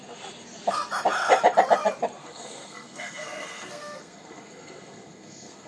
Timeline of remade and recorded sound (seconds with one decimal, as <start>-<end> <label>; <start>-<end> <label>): 0.0-2.2 recorded; 2.2-5.7 remade